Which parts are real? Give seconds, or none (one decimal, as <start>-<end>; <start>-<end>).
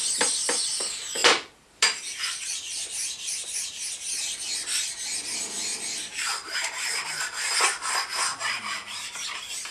0.0-1.2; 5.0-5.7; 7.1-8.3